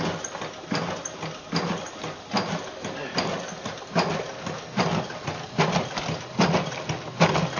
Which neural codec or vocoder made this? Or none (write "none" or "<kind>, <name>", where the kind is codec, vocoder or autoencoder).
none